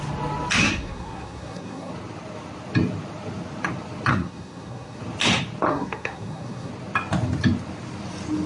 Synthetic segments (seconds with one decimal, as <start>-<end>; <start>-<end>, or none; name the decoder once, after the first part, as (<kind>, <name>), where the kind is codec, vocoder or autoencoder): 0.6-1.9 (codec, SNAC); 4.1-5.0; 5.7-6.7